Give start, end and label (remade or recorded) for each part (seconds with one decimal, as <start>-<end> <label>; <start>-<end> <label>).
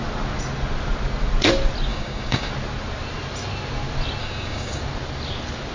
0.0-1.9 recorded; 1.9-2.5 remade; 2.5-4.2 recorded; 4.2-4.8 remade; 4.8-5.7 recorded